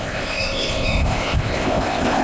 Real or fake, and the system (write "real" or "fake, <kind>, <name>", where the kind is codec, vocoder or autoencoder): fake, codec, ZipCodec